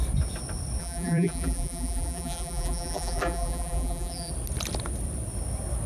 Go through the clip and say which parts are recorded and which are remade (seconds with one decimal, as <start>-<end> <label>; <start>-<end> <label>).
0.0-0.8 recorded; 0.8-4.3 remade; 4.3-5.9 recorded